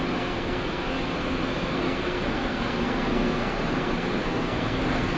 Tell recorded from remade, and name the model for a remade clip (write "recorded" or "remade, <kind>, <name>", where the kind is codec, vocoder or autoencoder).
remade, codec, SNAC